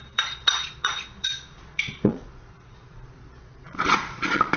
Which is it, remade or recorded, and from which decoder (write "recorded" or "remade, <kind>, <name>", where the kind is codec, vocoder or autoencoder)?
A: remade, vocoder, Vocos